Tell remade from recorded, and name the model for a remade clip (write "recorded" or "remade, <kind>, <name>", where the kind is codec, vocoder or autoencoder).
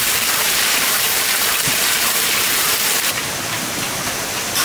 remade, vocoder, BigVGAN v2